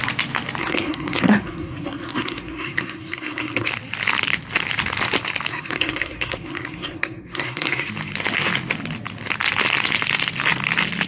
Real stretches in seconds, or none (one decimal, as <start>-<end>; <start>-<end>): 0.0-0.6; 3.7-5.5; 7.9-11.1